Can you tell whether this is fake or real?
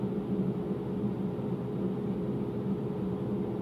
real